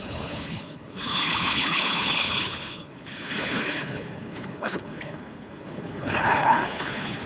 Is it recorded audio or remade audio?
remade